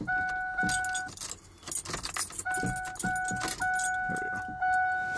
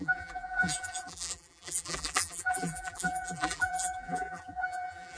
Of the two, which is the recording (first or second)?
first